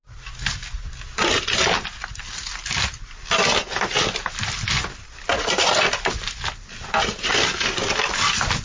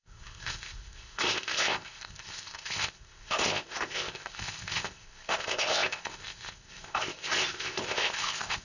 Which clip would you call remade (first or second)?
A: second